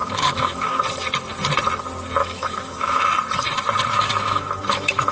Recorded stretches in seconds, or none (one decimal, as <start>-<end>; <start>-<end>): 0.8-2.2; 3.0-3.9